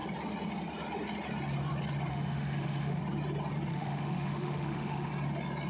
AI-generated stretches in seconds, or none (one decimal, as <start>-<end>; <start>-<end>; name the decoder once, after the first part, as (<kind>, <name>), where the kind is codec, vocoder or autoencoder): 2.1-3.0 (autoencoder, DAC-VAE); 3.7-5.1